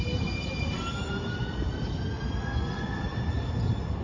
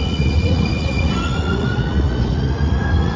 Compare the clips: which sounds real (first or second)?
first